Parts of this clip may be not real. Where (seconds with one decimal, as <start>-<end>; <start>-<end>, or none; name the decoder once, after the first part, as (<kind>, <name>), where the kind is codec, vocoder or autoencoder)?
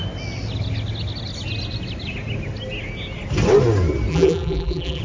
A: 4.1-5.0 (vocoder, BigVGAN v2)